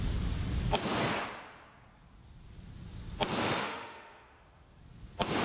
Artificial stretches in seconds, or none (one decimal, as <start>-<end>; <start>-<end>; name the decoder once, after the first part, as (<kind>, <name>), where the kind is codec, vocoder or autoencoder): 3.6-4.8 (autoencoder, DAC-VAE)